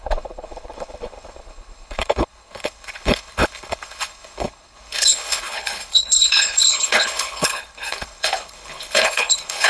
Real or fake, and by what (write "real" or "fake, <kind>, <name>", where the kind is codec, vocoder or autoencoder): fake, codec, HILCodec